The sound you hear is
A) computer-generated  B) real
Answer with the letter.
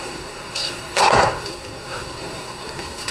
A